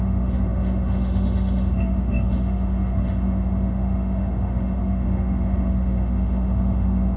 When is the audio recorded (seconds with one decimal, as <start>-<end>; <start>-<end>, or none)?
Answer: none